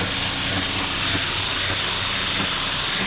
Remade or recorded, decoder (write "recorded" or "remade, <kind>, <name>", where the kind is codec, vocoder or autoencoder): recorded